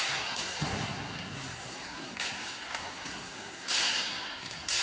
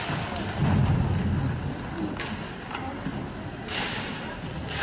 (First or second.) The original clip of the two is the second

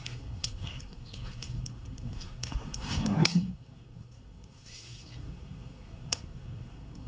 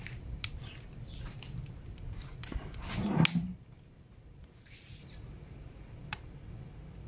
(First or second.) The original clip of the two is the second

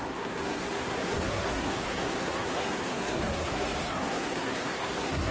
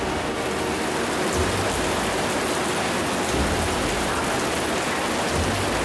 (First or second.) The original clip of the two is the second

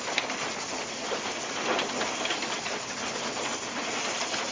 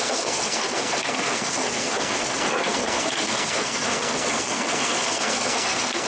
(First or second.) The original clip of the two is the first